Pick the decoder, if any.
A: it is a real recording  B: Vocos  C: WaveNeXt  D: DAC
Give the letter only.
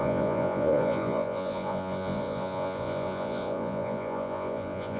B